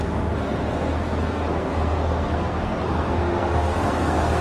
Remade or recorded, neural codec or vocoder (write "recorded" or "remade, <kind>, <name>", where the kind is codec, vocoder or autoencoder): remade, codec, SNAC